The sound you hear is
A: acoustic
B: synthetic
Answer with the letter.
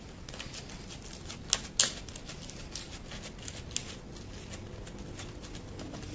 A